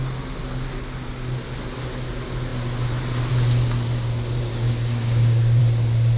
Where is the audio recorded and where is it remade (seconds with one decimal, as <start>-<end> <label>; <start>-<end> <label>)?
0.0-4.5 recorded; 4.5-5.6 remade; 5.6-6.2 recorded

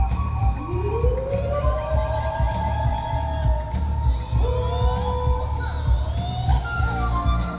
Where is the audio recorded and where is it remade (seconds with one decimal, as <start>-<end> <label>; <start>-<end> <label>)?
0.0-6.5 recorded; 6.5-7.6 remade

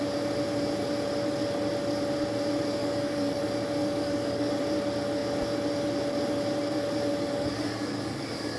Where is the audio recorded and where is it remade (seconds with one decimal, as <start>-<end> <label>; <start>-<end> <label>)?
0.0-2.8 recorded; 2.8-3.4 remade; 3.4-3.8 recorded; 3.8-4.5 remade; 4.5-7.1 recorded; 7.1-8.6 remade

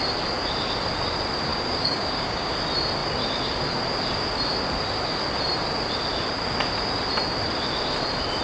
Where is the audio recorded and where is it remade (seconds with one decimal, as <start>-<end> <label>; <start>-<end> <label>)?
0.0-1.5 recorded; 1.5-2.5 remade; 2.5-8.4 recorded

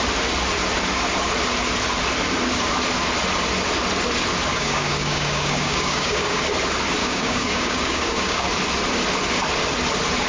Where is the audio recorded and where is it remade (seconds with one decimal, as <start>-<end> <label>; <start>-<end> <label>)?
0.0-4.5 recorded; 4.5-6.4 remade; 6.4-7.0 recorded; 7.0-8.5 remade; 8.5-10.3 recorded